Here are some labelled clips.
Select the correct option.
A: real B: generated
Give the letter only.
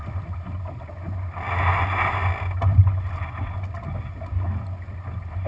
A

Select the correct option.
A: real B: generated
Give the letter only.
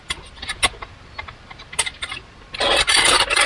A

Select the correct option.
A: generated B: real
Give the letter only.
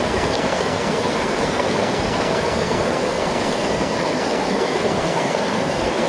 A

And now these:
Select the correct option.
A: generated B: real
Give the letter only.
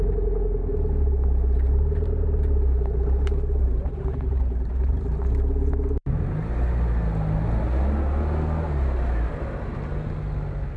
B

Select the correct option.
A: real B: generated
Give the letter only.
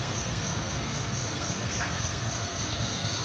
B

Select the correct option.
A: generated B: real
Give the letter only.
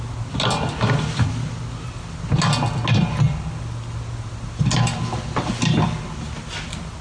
B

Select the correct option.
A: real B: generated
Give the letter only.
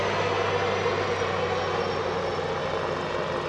A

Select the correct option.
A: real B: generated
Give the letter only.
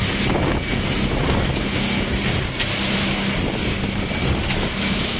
A